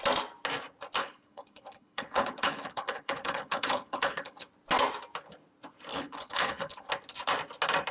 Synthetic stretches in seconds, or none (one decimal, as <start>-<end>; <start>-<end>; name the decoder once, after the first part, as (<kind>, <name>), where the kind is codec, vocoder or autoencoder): 1.0-4.5 (codec, HILCodec); 5.9-6.9

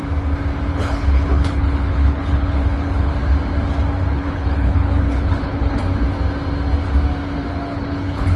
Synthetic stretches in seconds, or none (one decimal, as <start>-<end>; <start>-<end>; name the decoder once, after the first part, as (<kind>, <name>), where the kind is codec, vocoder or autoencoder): 0.7-3.1 (codec, HILCodec); 4.1-5.8; 7.5-8.4